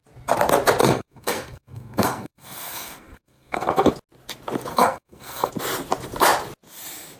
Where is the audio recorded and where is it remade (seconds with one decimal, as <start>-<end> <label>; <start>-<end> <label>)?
0.0-0.8 recorded; 0.8-3.9 remade; 3.9-4.7 recorded; 4.7-5.5 remade; 5.5-7.2 recorded